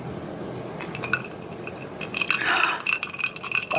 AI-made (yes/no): no